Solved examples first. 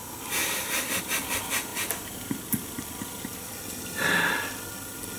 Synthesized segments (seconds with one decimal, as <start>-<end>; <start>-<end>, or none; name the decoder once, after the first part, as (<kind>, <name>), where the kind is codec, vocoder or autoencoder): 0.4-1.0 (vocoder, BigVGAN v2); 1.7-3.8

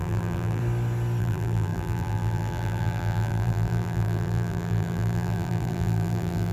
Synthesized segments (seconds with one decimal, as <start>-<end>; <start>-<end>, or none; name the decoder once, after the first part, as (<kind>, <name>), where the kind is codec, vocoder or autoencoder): 0.0-0.6 (vocoder, BigVGAN v2); 1.2-6.5

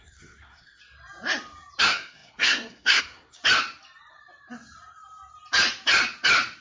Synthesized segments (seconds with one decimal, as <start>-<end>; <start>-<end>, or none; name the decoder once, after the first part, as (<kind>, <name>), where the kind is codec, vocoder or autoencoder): 0.0-0.8 (codec, SNAC); 1.8-3.4

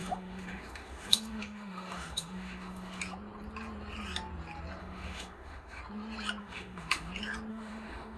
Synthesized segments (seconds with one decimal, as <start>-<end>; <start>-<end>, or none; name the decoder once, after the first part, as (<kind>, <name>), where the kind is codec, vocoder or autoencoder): 0.0-3.0 (autoencoder, DAC-VAE); 4.8-5.8; 6.4-7.1; 7.5-8.2

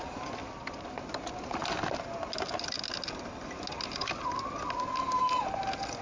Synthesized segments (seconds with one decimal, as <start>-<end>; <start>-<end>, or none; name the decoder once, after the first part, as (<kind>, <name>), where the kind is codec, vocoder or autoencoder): none